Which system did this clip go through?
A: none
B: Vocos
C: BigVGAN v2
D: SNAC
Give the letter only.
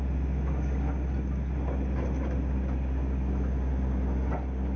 A